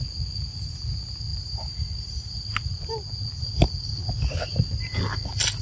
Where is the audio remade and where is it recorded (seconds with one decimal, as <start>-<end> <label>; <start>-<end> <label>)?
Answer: 0.0-1.3 recorded; 1.3-2.9 remade; 2.9-5.6 recorded